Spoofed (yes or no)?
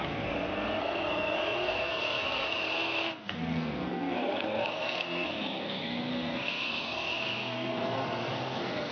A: yes